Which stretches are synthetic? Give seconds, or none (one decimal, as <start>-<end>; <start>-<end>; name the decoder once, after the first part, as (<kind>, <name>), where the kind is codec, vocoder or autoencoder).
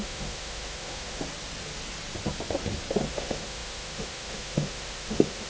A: 0.0-1.2 (autoencoder, DAC-VAE); 3.1-5.5